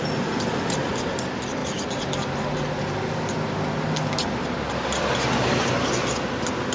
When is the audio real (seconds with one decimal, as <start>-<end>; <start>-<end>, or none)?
0.0-6.7

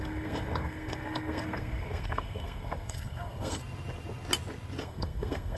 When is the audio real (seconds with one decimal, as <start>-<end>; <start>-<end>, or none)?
3.6-4.8

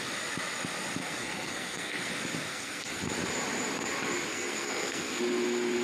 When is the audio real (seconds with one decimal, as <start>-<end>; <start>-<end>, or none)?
0.0-1.0; 2.1-2.5; 3.0-4.3; 5.2-5.8

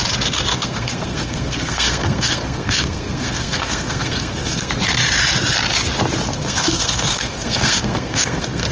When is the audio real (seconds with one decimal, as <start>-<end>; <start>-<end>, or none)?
0.0-0.5; 4.7-6.3

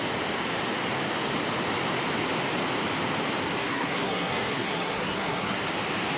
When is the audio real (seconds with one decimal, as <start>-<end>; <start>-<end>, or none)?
0.0-3.6; 5.6-6.2

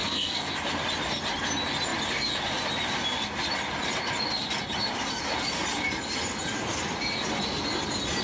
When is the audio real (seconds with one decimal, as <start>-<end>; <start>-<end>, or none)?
0.5-8.2

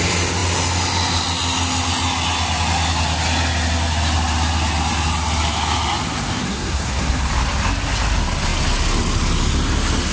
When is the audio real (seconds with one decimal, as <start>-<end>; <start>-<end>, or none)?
0.0-6.4; 7.3-10.1